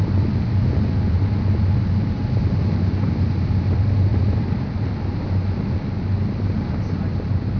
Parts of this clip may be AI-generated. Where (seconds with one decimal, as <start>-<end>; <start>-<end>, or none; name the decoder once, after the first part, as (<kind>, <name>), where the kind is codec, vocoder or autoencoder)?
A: none